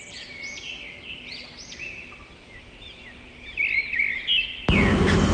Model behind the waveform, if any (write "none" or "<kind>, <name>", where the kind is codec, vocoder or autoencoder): none